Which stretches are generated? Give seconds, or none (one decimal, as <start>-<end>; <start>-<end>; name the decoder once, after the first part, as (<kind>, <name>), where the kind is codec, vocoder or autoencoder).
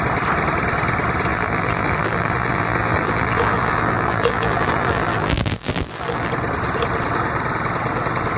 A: 1.3-6.3 (vocoder, BigVGAN v2)